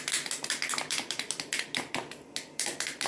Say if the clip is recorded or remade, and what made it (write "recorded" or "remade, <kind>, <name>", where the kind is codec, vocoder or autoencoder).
recorded